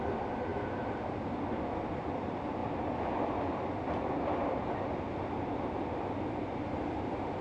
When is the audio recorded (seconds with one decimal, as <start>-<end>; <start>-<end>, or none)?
0.0-0.5; 1.3-7.4